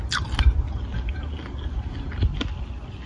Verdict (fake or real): real